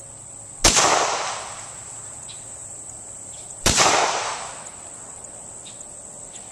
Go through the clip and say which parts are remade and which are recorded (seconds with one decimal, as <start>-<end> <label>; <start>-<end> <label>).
0.0-1.5 recorded; 1.5-4.5 remade; 4.5-6.5 recorded